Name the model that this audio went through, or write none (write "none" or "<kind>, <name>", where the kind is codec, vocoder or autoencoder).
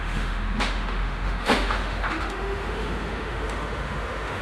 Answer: autoencoder, DAC-VAE